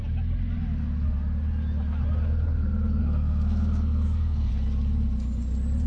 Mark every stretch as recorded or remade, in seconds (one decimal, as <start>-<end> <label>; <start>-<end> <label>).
0.0-3.0 recorded; 3.0-4.5 remade; 4.5-5.9 recorded